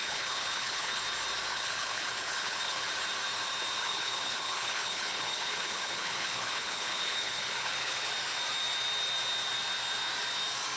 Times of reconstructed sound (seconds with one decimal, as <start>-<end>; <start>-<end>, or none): 0.0-1.0; 1.5-2.9; 3.8-8.1

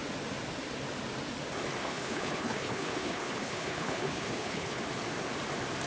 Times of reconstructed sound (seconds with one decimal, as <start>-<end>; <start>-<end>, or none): 1.8-4.8

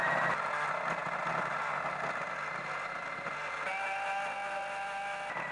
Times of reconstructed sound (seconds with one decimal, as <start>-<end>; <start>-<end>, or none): none

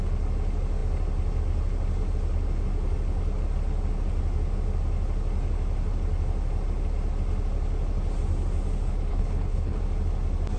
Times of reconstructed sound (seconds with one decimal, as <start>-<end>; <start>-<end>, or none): 9.1-9.8

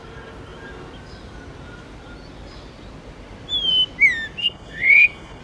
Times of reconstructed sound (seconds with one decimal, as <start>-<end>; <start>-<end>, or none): 4.4-5.4

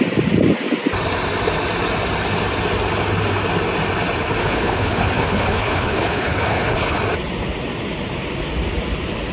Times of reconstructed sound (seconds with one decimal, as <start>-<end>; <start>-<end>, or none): 4.4-7.0

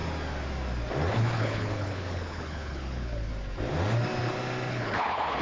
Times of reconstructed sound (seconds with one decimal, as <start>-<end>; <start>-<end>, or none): 1.1-3.3; 4.7-5.4

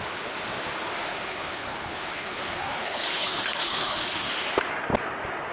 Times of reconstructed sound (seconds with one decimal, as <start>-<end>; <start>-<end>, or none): 1.0-4.3